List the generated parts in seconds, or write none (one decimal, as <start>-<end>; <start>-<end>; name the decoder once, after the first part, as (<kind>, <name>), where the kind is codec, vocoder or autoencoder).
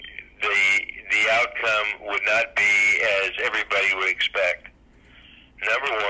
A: none